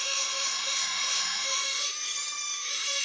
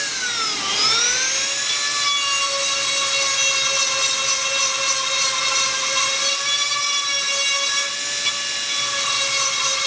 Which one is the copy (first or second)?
first